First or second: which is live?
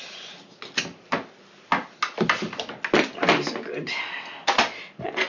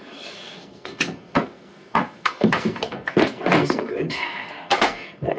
first